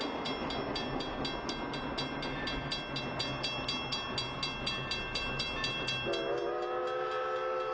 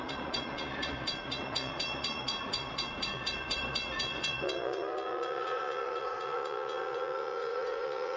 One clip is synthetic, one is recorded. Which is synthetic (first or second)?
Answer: second